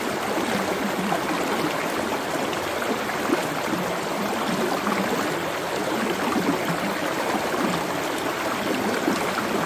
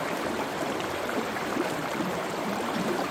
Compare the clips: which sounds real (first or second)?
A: first